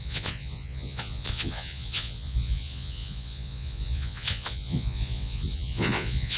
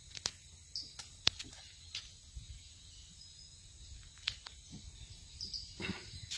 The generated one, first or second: first